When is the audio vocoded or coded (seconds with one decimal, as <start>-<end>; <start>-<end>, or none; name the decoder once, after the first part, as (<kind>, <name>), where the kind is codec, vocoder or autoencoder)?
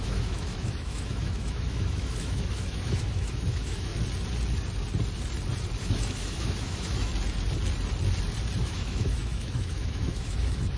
0.0-3.9 (autoencoder, DAC-VAE); 5.8-7.1; 8.6-10.8